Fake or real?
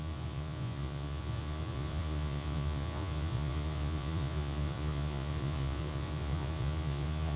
fake